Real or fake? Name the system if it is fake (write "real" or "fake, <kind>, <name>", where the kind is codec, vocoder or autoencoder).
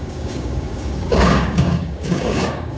fake, codec, DAC